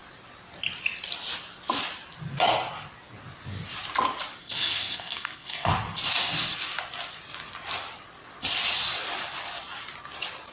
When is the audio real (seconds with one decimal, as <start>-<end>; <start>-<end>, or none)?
0.0-4.4; 5.7-10.5